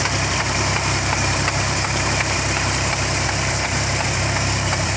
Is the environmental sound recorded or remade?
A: remade